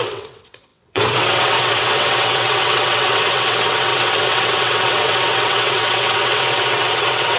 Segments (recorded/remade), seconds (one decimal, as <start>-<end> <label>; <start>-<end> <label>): 0.0-7.4 remade